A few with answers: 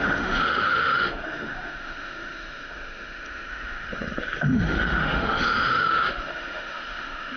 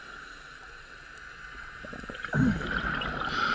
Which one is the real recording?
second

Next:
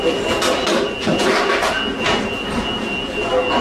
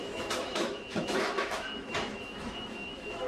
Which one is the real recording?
first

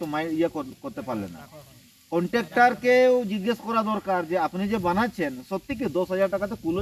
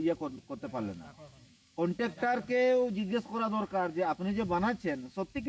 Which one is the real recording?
first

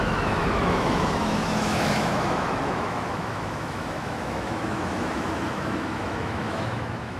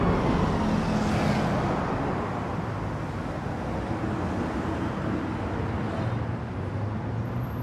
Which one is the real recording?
second